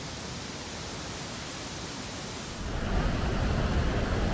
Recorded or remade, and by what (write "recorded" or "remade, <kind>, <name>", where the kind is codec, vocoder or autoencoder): recorded